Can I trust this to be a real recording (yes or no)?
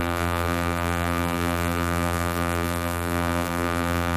no